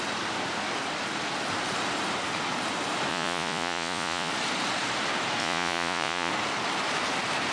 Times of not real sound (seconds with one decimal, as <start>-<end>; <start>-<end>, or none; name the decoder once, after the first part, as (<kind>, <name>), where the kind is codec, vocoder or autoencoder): 3.1-4.3 (vocoder, Vocos); 5.4-6.3